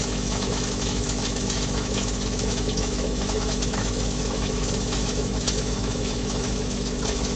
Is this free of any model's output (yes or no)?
no